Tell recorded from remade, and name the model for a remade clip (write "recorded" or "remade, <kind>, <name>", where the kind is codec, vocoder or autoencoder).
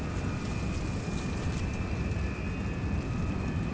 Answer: recorded